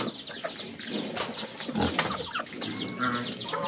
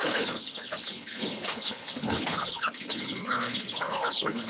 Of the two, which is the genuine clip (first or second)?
first